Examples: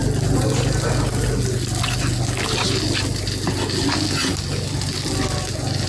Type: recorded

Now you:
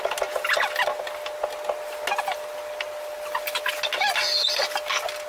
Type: recorded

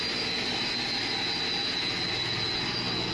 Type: recorded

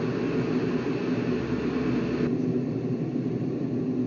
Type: recorded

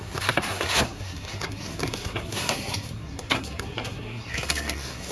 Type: remade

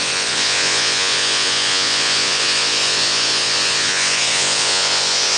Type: remade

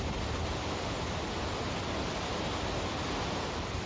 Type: recorded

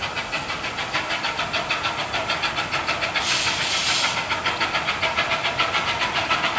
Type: recorded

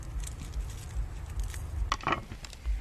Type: recorded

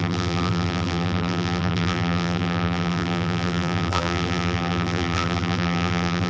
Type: remade